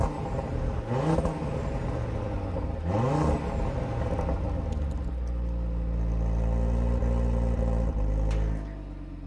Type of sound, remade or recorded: recorded